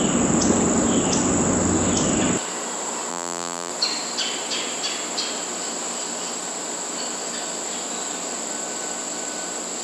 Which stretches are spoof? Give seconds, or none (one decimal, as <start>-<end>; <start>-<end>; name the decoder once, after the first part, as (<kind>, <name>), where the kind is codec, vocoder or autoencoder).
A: 3.1-3.7 (vocoder, BigVGAN v2)